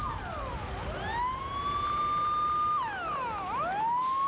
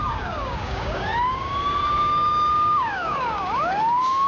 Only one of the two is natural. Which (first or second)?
first